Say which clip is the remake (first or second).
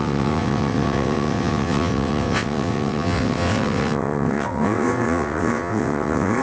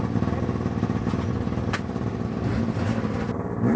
first